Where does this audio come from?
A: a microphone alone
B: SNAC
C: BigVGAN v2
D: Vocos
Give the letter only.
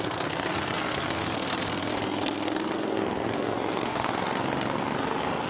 B